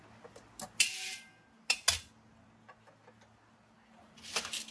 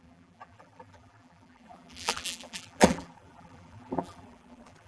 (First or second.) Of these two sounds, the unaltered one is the first